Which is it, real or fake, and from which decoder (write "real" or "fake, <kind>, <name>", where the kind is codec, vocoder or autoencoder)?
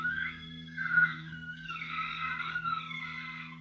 fake, codec, SNAC